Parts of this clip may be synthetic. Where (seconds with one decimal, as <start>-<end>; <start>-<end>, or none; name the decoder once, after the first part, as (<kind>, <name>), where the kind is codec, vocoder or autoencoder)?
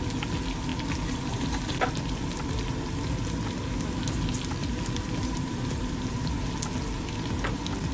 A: 4.6-6.5 (vocoder, BigVGAN v2)